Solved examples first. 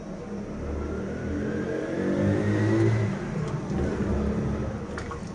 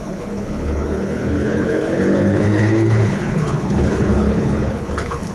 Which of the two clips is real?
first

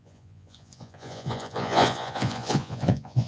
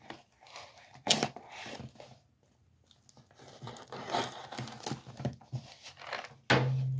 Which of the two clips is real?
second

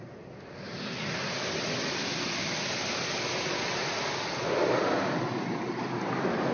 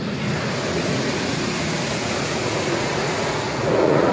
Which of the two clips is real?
first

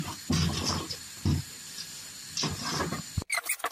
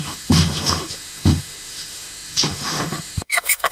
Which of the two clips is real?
first